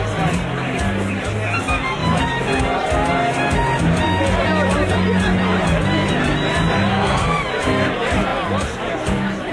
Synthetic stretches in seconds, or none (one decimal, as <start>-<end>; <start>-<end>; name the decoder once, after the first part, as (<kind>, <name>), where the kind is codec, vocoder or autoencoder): 6.9-7.4 (codec, SNAC)